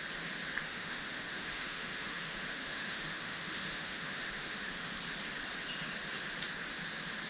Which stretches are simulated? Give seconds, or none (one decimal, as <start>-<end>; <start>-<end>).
0.6-5.0